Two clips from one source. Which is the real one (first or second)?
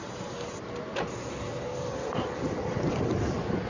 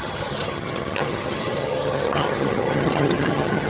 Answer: first